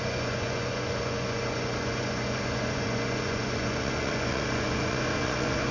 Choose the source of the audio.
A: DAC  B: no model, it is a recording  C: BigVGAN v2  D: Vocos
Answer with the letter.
D